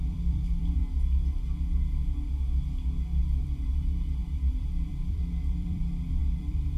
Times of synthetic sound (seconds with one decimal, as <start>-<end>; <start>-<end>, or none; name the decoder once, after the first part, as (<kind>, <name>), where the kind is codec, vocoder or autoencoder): 0.0-0.8 (vocoder, BigVGAN v2); 3.4-6.8